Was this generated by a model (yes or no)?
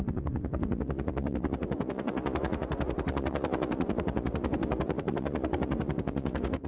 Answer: yes